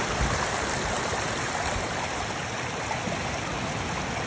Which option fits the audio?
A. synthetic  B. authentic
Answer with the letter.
B